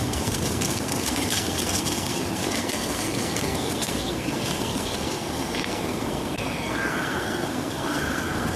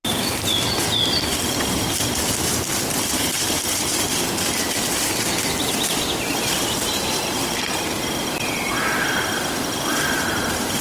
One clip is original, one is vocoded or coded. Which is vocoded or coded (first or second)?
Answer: first